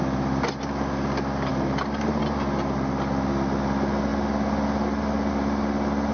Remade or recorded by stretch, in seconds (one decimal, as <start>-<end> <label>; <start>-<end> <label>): 0.0-6.1 recorded